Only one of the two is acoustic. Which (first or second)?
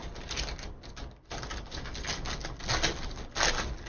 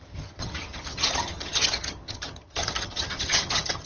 first